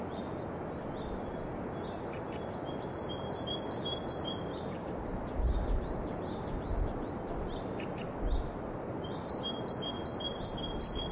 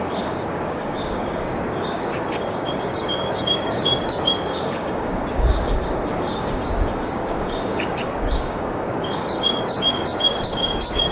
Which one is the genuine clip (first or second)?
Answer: first